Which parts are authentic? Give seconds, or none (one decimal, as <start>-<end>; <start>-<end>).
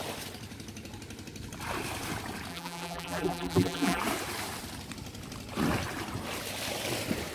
0.0-2.5; 4.0-7.3